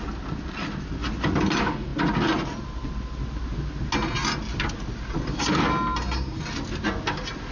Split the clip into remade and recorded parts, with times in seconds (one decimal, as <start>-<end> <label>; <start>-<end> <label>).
0.0-7.5 recorded